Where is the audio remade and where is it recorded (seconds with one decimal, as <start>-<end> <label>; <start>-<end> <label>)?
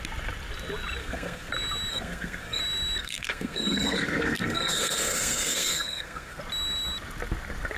0.0-1.0 recorded; 1.0-1.5 remade; 1.5-1.9 recorded; 1.9-2.6 remade; 2.6-3.0 recorded; 3.0-6.4 remade; 6.4-7.8 recorded